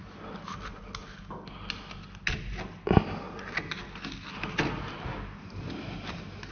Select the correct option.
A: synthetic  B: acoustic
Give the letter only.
B